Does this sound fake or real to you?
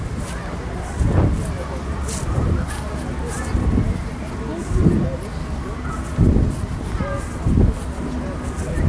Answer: real